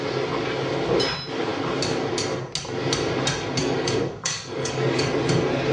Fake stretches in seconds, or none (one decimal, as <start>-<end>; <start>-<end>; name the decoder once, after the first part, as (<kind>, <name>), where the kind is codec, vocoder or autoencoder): 3.6-5.1 (codec, DAC)